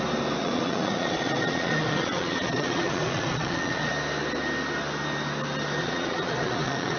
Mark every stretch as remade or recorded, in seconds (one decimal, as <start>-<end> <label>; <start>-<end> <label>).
0.0-0.4 recorded; 0.4-3.9 remade; 3.9-5.8 recorded; 5.8-7.0 remade